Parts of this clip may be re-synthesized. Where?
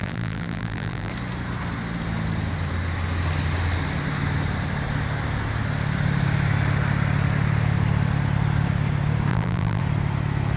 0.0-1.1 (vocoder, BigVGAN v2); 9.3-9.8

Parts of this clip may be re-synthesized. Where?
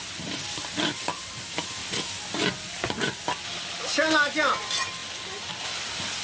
none